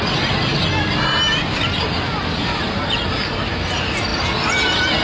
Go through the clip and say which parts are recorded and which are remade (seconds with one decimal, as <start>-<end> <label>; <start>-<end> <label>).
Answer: 0.0-5.0 recorded